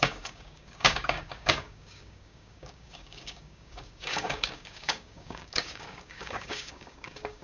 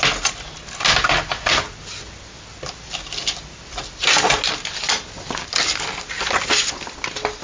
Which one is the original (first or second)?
second